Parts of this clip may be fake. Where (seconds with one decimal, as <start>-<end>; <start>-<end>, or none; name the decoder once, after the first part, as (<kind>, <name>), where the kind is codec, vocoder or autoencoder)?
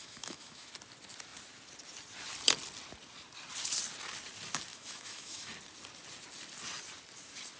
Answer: 0.0-0.7 (autoencoder, DAC-VAE); 4.7-5.5